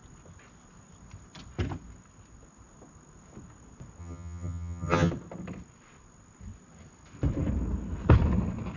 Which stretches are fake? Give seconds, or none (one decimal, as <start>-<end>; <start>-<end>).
4.0-5.1

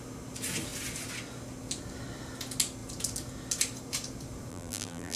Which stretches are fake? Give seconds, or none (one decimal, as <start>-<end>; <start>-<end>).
4.5-5.2

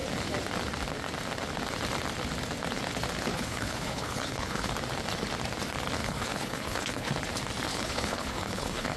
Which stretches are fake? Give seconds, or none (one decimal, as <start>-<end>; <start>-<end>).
3.3-4.7; 6.0-7.1; 7.7-9.0

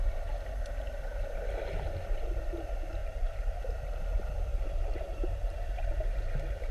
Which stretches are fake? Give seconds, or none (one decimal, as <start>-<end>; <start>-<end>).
3.0-3.6; 4.5-6.7

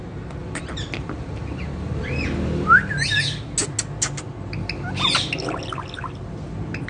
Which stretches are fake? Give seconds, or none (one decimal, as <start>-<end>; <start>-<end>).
0.4-2.2